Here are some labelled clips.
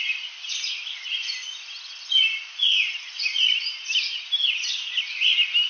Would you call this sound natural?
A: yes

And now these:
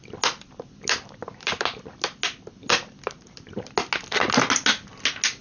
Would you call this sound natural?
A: yes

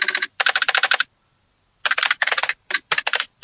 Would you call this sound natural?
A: yes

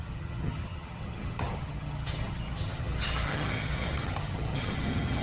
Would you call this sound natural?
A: no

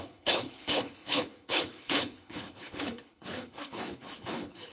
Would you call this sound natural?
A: no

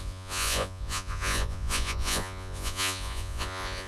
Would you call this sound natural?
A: no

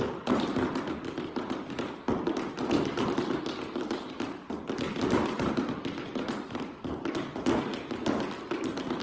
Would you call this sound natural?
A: yes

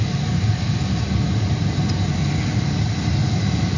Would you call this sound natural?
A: yes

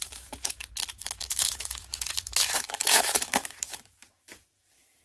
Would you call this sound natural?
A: no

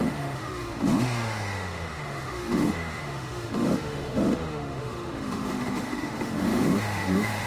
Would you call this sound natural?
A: no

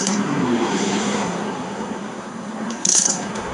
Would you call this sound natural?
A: no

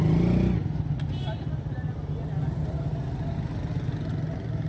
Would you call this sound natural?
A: yes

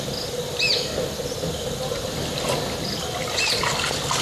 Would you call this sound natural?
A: yes